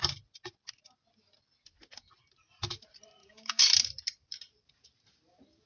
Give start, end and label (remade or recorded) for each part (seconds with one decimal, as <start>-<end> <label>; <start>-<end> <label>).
0.0-3.2 recorded; 3.2-3.7 remade; 3.7-5.7 recorded